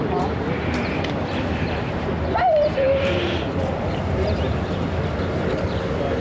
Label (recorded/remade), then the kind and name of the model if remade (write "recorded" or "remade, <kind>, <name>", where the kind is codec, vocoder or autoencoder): remade, vocoder, BigVGAN v2